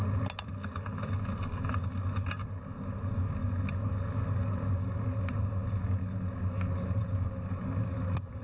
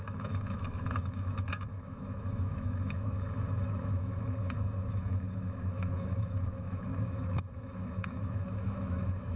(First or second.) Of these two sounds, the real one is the first